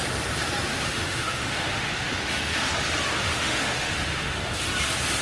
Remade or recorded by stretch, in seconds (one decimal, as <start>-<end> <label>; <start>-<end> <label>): 0.0-0.7 recorded; 0.7-2.7 remade; 2.7-3.2 recorded; 3.2-4.5 remade; 4.5-5.2 recorded